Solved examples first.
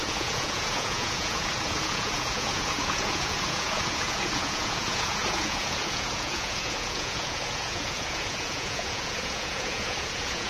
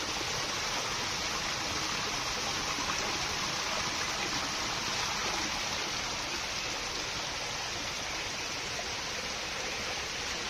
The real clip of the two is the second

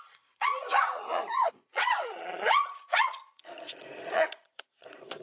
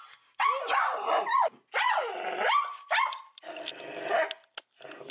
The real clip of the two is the second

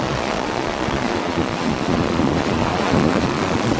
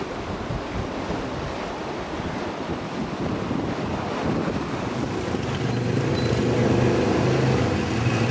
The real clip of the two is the second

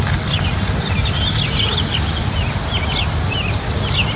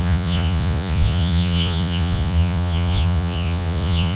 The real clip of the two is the first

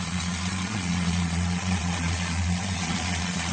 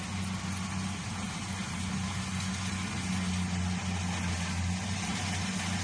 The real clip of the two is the second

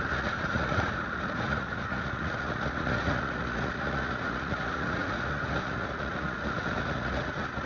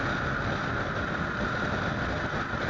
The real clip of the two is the second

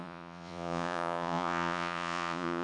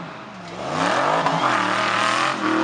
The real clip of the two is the second